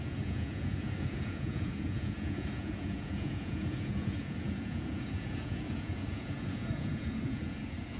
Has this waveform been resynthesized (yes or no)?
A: yes